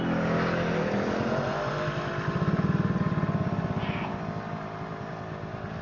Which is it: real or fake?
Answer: real